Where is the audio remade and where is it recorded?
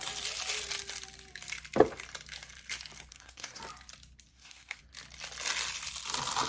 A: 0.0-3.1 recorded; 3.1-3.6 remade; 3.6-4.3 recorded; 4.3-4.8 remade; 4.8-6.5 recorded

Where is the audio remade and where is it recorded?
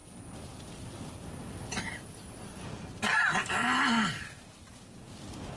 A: 0.0-5.6 recorded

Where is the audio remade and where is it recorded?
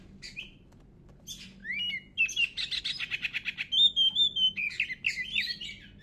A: 0.0-6.0 recorded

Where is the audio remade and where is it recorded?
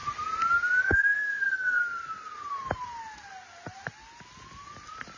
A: 0.0-0.8 recorded; 0.8-1.8 remade; 1.8-5.2 recorded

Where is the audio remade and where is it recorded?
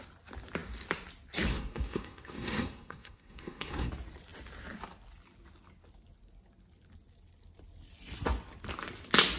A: 0.0-1.5 recorded; 1.5-3.9 remade; 3.9-9.4 recorded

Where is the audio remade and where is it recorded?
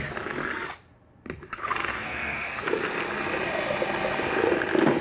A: 0.0-1.9 recorded; 1.9-2.6 remade; 2.6-5.0 recorded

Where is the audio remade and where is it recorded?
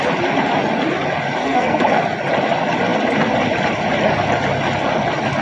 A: 0.0-1.4 recorded; 1.4-2.0 remade; 2.0-5.4 recorded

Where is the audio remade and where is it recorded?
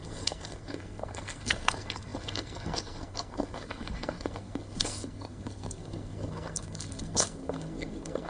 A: 0.0-8.3 remade